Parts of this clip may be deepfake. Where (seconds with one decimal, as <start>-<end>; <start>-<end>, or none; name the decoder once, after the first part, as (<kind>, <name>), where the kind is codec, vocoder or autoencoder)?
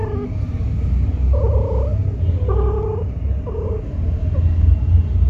none